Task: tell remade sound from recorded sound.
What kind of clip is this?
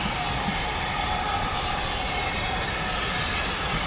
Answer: recorded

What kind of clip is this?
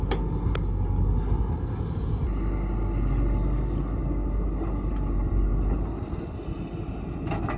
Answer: recorded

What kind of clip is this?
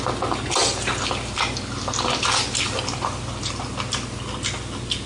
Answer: recorded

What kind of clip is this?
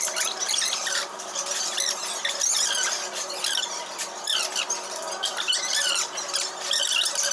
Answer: remade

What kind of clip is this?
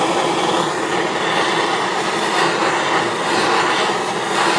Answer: recorded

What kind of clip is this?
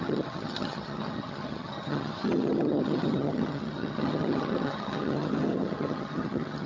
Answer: remade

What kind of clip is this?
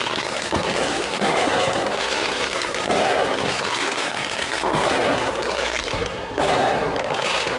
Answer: remade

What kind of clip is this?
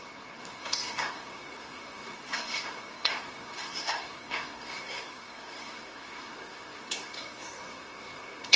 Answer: remade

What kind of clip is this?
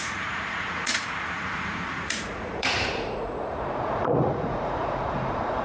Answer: remade